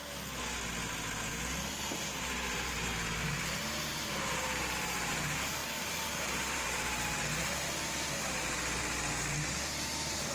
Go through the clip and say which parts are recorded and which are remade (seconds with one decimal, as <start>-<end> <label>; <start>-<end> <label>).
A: 0.0-1.7 recorded; 1.7-10.3 remade